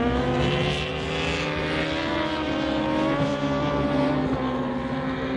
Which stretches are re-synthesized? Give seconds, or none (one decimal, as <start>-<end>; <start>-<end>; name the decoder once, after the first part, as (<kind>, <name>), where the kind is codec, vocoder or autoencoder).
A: none